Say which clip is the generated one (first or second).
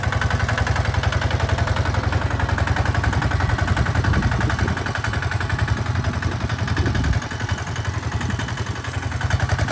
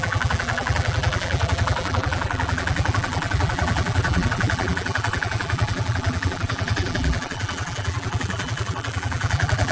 second